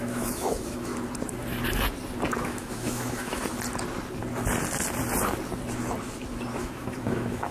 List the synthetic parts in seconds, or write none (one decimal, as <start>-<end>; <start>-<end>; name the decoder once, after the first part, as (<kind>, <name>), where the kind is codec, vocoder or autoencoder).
0.0-0.9 (autoencoder, DAC-VAE); 2.4-3.4; 6.6-7.5